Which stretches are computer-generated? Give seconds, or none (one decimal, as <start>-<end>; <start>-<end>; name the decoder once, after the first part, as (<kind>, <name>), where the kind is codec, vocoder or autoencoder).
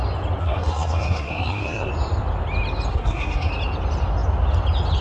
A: 0.4-1.9 (codec, SNAC); 2.9-3.5